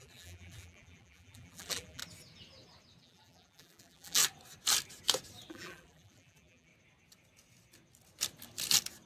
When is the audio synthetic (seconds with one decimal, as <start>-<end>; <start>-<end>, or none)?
0.0-2.0; 3.0-4.2; 5.5-6.7